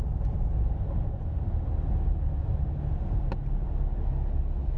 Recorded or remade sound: recorded